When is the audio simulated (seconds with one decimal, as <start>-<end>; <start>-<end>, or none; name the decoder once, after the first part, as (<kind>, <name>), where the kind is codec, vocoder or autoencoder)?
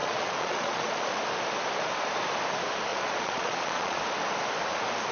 0.0-1.1 (vocoder, Vocos); 2.9-4.0